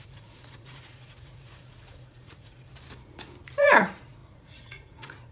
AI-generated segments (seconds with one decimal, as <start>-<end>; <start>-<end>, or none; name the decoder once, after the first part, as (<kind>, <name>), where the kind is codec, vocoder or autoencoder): 0.0-2.7 (vocoder, Vocos); 3.6-5.3